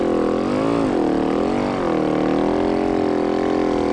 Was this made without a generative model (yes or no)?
yes